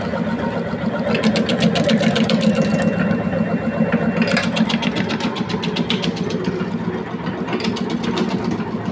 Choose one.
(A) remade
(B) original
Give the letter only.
B